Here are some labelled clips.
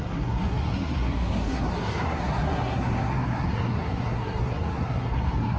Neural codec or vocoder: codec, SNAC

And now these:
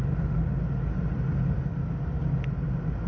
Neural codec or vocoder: none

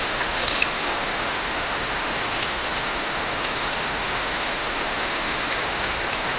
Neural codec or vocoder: autoencoder, DAC-VAE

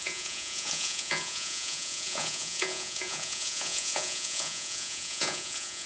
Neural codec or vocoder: vocoder, Vocos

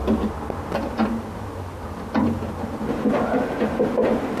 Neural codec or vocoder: none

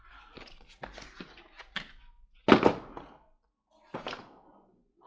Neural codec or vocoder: none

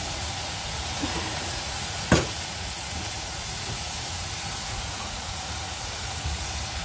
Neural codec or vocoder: vocoder, Vocos